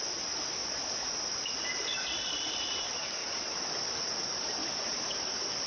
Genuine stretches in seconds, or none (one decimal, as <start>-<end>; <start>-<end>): 0.0-5.7